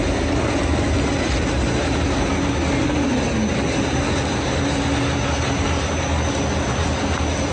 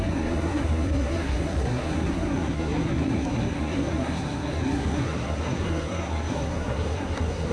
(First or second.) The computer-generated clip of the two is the second